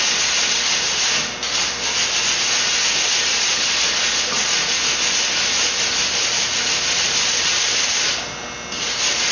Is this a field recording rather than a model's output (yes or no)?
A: yes